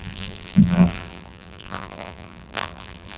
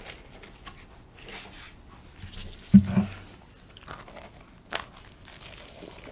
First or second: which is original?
second